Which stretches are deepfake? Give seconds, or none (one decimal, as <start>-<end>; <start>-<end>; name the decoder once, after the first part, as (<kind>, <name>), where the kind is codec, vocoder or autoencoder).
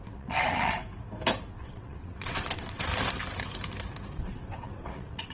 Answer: 0.0-0.8 (vocoder, WaveNeXt); 1.5-2.9; 4.2-5.3